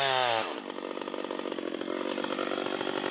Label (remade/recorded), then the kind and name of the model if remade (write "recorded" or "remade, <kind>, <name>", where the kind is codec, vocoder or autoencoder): recorded